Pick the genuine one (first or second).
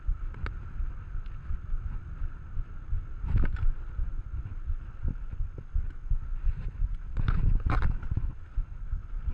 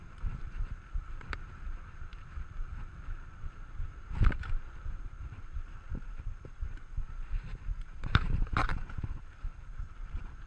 first